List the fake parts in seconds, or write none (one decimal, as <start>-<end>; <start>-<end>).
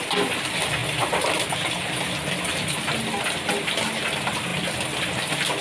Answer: none